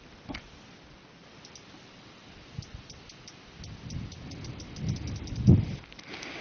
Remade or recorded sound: recorded